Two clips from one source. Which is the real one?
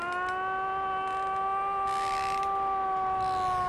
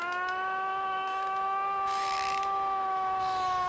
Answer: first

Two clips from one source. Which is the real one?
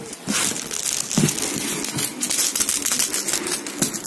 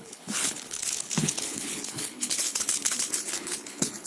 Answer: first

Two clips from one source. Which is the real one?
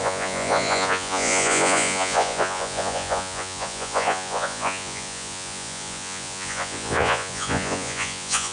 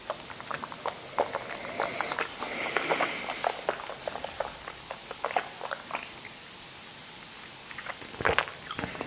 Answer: second